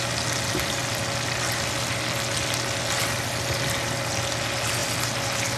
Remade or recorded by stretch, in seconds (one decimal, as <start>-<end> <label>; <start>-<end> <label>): 0.0-5.6 recorded